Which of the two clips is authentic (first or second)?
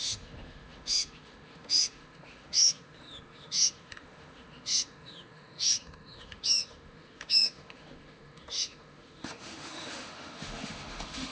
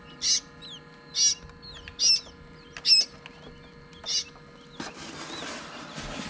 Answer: second